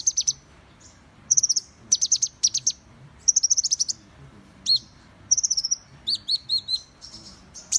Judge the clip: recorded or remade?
remade